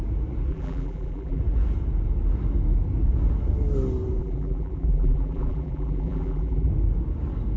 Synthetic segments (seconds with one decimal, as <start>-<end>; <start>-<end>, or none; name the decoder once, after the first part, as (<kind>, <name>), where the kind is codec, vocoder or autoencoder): 0.5-1.4 (vocoder, BigVGAN v2); 4.2-6.7